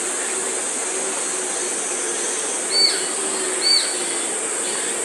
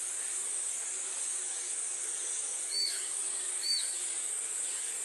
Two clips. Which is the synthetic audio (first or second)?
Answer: second